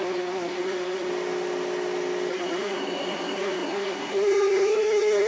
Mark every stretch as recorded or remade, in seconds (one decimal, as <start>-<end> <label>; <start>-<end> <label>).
0.0-1.1 remade; 1.1-2.3 recorded; 2.3-5.3 remade